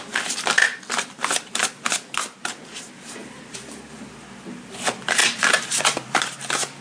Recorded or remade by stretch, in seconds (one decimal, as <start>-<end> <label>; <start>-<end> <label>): 0.0-5.2 recorded; 5.2-5.8 remade; 5.8-6.8 recorded